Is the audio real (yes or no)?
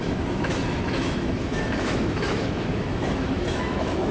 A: no